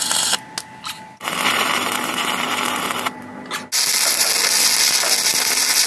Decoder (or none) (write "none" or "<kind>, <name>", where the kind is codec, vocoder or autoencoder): none